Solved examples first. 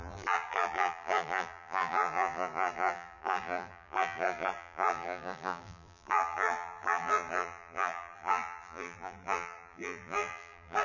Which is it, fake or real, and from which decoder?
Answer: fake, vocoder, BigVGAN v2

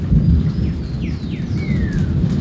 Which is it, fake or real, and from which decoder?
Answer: real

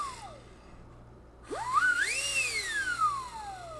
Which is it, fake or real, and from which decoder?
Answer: real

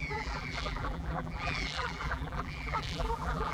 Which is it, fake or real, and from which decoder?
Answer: fake, vocoder, BigVGAN v2